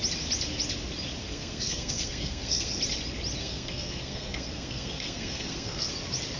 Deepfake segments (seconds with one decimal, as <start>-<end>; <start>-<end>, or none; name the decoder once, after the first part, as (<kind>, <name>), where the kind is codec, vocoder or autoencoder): 1.2-2.8 (codec, SNAC); 3.4-5.9